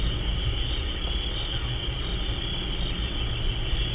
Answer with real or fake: real